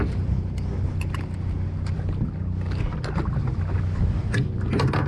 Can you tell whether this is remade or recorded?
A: recorded